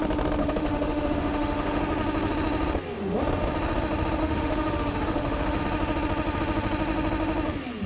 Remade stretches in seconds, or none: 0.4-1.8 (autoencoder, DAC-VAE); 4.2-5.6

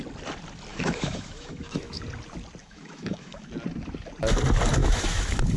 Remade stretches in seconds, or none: 0.7-2.0 (autoencoder, DAC-VAE); 2.6-3.5; 4.8-5.6

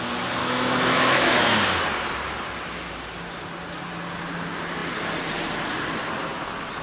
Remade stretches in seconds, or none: 0.4-1.6 (autoencoder, DAC-VAE)